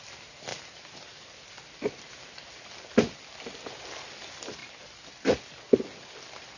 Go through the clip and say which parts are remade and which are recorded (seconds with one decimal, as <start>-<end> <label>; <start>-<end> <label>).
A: 0.0-6.6 recorded